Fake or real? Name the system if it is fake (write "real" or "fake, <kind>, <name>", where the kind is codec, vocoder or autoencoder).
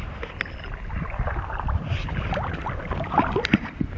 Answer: real